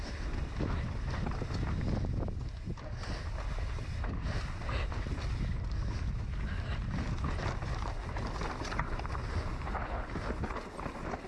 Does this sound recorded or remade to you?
recorded